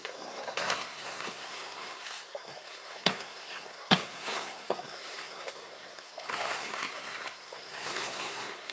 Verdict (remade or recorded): remade